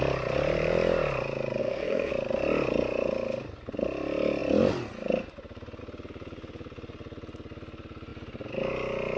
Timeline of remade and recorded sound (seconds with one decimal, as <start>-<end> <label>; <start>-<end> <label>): 0.0-1.6 recorded; 1.6-2.1 remade; 2.1-9.2 recorded